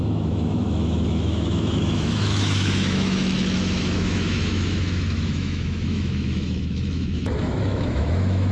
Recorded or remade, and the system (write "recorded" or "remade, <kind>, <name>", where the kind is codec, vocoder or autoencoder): remade, autoencoder, DAC-VAE